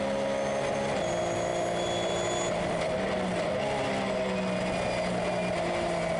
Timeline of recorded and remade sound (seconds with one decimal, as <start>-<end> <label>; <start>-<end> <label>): 0.0-6.2 recorded